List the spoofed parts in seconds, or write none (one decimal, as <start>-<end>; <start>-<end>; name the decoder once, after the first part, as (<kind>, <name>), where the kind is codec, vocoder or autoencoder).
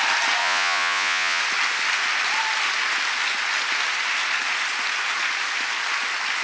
0.4-1.4 (vocoder, Vocos)